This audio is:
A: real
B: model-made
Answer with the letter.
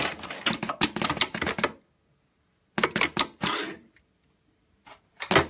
A